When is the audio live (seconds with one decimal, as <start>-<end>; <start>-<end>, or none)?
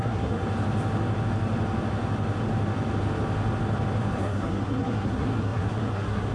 0.4-4.2